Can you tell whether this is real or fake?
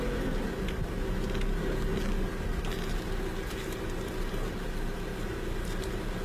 real